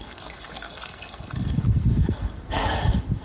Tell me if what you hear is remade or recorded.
remade